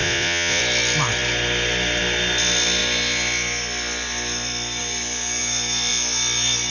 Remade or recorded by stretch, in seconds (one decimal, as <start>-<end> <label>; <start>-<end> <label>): 0.0-0.6 remade; 0.6-6.7 recorded

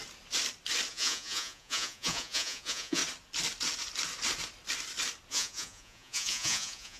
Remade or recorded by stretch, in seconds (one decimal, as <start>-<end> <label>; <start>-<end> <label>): 0.0-0.9 recorded; 0.9-3.0 remade; 3.0-5.3 recorded; 5.3-7.0 remade